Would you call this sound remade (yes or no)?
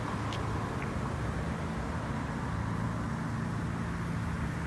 no